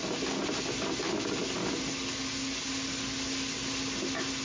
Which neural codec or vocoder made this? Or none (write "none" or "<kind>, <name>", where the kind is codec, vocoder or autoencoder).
none